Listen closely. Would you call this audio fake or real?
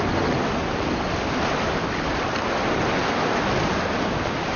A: real